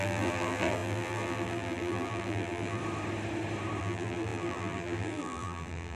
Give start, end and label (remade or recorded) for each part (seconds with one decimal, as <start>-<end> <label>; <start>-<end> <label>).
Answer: 0.0-2.8 remade; 2.8-3.8 recorded; 3.8-6.0 remade